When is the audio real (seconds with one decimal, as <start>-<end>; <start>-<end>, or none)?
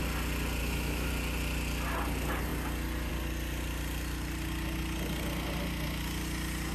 0.0-0.6; 1.1-6.7